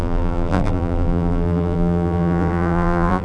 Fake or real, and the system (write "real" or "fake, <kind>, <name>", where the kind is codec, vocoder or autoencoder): fake, vocoder, BigVGAN v2